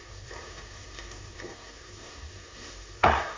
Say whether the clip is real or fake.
fake